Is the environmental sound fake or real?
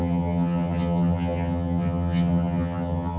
fake